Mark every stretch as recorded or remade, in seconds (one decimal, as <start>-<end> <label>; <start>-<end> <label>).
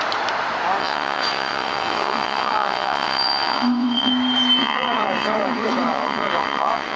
0.0-0.8 recorded; 0.8-4.1 remade; 4.1-4.6 recorded; 4.6-7.0 remade